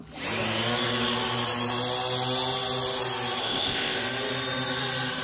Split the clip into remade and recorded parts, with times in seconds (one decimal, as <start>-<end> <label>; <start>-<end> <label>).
0.0-3.4 recorded; 3.4-4.0 remade; 4.0-5.2 recorded